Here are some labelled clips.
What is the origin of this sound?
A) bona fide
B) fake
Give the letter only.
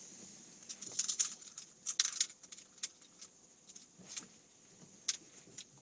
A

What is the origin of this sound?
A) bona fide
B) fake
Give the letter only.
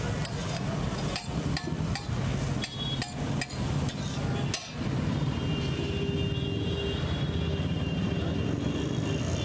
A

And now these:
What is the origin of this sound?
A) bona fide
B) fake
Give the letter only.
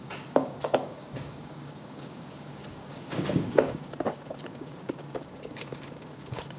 B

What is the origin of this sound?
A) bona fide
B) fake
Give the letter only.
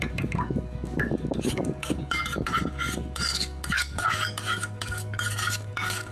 B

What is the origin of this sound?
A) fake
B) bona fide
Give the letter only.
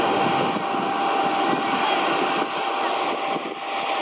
B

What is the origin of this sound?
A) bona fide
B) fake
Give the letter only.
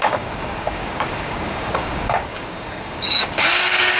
B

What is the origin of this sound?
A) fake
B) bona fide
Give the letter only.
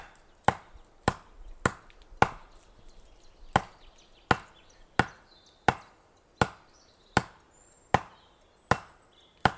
B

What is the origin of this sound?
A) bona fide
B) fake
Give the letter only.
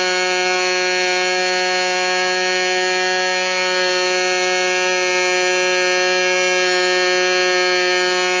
A